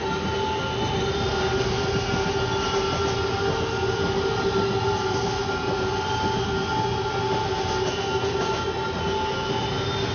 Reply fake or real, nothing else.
real